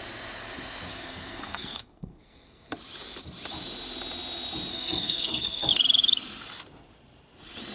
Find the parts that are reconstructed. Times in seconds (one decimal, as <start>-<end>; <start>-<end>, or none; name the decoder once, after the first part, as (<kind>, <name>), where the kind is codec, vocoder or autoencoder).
0.9-2.7 (codec, SNAC); 4.7-5.7